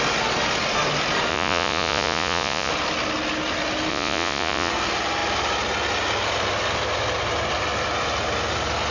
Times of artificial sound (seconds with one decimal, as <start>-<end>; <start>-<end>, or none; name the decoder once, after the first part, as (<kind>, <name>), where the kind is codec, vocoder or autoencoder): 1.3-2.7 (vocoder, Vocos); 3.9-4.7

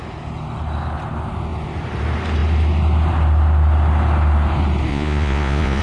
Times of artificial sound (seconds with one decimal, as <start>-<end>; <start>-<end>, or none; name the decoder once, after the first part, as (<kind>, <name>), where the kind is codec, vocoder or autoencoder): 4.9-5.8 (vocoder, Vocos)